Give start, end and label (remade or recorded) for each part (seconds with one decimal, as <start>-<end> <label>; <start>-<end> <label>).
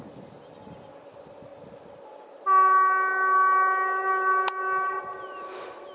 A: 0.0-5.9 recorded